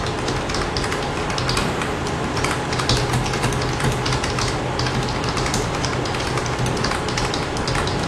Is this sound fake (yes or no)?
no